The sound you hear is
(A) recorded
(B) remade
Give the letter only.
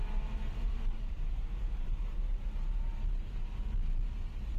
B